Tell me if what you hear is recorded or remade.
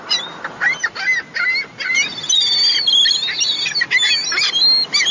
recorded